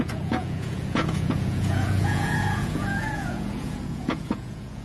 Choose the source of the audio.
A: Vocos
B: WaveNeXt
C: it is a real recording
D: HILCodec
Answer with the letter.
A